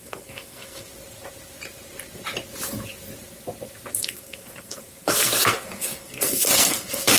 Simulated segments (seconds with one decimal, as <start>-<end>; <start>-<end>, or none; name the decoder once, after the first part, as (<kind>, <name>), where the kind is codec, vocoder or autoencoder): 0.0-0.9 (codec, SNAC); 3.9-7.2